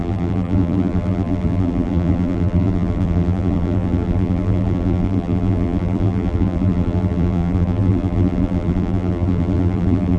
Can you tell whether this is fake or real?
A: fake